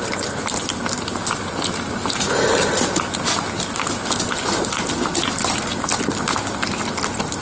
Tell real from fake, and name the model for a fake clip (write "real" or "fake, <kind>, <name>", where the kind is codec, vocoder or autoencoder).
real